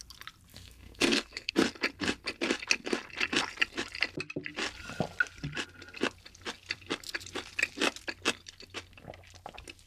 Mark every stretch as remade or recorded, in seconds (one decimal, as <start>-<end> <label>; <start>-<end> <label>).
0.0-0.5 recorded; 0.5-1.5 remade; 1.5-9.9 recorded